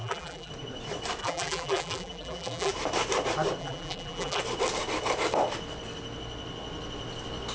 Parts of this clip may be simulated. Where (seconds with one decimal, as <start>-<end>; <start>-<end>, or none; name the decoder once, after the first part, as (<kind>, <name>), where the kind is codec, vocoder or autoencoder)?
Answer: 0.0-0.5 (vocoder, BigVGAN v2); 1.2-2.7; 3.6-4.4